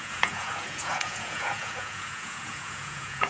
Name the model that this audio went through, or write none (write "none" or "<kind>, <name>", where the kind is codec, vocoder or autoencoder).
vocoder, Vocos